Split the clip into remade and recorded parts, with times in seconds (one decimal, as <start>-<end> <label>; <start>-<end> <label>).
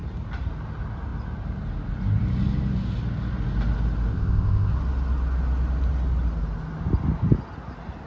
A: 0.0-4.1 recorded; 4.1-4.7 remade; 4.7-8.1 recorded